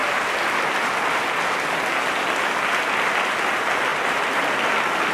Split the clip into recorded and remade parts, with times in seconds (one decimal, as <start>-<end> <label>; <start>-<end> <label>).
0.0-5.1 recorded